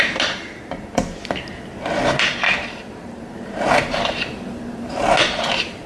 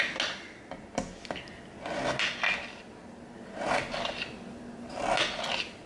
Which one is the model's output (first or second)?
first